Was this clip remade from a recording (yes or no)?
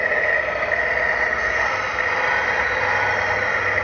no